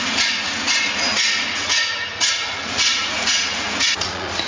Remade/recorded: remade